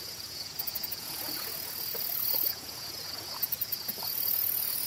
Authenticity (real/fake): fake